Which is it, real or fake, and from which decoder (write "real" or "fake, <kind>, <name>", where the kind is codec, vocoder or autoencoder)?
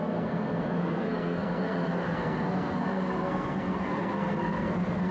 fake, codec, SNAC